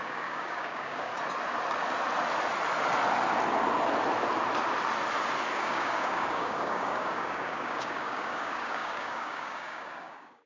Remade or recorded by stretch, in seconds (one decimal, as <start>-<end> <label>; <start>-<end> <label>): 0.0-1.1 remade; 1.1-5.5 recorded; 5.5-10.5 remade